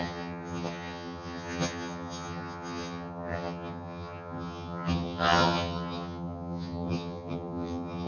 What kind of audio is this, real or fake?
fake